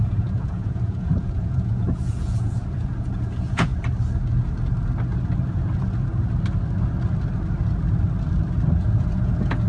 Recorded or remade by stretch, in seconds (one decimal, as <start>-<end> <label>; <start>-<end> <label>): 0.0-3.7 remade; 3.7-8.8 recorded; 8.8-9.7 remade